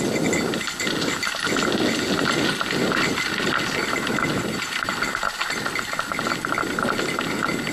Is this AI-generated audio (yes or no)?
no